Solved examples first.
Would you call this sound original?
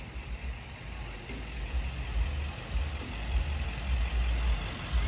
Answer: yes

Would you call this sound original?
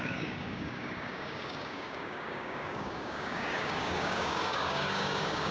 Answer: no